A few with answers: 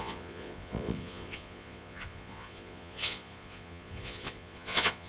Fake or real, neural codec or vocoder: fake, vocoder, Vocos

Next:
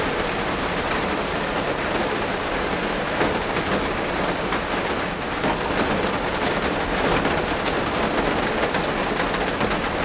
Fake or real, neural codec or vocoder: real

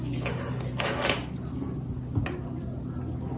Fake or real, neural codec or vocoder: real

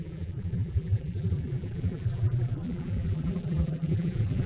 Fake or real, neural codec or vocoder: fake, vocoder, BigVGAN v2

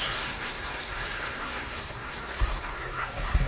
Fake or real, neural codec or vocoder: fake, codec, SNAC